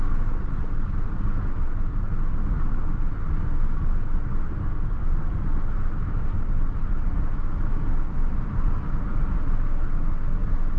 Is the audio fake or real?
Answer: real